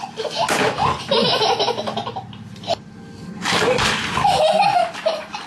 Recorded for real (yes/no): yes